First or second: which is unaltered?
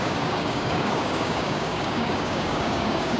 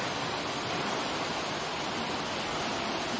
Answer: second